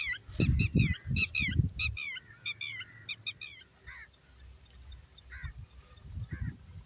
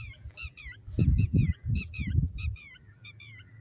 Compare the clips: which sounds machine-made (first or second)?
second